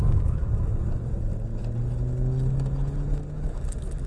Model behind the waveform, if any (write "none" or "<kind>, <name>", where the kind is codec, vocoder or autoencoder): none